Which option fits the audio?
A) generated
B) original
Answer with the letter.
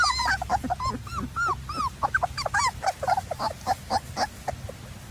B